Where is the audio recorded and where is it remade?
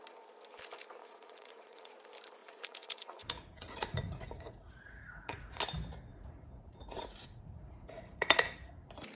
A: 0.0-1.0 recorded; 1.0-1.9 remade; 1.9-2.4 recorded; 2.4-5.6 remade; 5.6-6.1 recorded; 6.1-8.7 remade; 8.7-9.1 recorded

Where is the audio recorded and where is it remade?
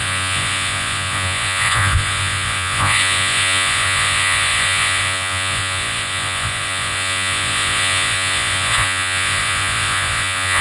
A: 0.0-10.6 remade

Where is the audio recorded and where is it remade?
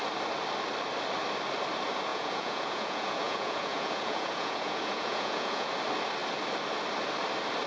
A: 0.0-2.1 recorded; 2.1-5.7 remade; 5.7-7.7 recorded